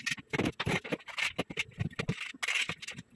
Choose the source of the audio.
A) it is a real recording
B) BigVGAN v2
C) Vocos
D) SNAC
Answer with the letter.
A